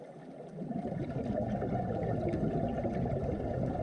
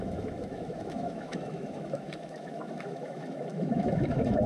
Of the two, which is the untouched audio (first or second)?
first